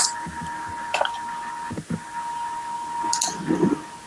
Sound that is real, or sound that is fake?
real